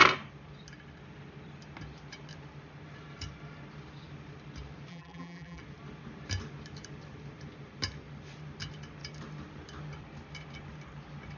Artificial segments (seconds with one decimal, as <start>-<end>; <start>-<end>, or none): 4.9-5.6